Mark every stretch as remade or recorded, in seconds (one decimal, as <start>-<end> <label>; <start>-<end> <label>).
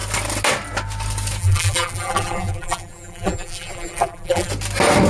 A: 0.0-1.4 recorded; 1.4-4.5 remade; 4.5-5.1 recorded